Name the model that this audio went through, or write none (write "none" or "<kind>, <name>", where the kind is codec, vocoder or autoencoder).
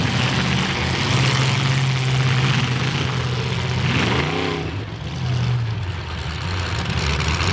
none